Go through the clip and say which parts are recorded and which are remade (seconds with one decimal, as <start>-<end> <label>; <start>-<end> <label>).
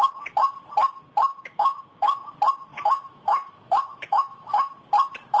0.0-1.3 recorded; 1.3-2.3 remade; 2.3-2.7 recorded; 2.7-4.7 remade; 4.7-5.4 recorded